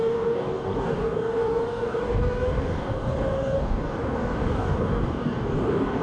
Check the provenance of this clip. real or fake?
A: fake